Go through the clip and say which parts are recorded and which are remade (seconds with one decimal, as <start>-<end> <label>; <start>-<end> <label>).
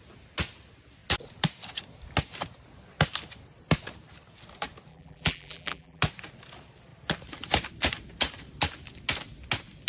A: 0.0-4.9 recorded; 4.9-6.0 remade; 6.0-9.9 recorded